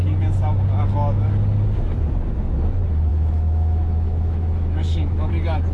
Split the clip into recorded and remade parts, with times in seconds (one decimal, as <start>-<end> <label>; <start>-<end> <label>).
0.0-3.1 recorded; 3.1-5.3 remade; 5.3-5.7 recorded